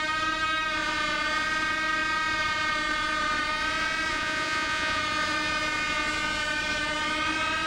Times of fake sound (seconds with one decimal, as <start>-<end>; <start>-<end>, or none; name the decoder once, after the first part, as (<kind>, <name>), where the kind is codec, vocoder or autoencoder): 4.1-5.0 (vocoder, Vocos)